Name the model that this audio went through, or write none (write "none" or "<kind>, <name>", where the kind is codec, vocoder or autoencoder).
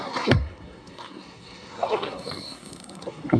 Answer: codec, SNAC